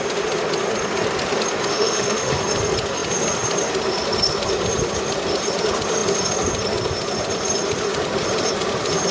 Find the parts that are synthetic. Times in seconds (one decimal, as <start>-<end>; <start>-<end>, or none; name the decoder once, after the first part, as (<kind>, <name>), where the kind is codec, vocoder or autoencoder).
1.7-2.4 (autoencoder, DAC-VAE)